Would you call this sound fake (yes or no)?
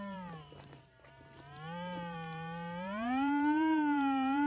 yes